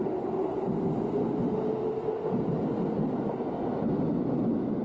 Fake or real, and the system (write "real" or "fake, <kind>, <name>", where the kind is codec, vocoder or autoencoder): real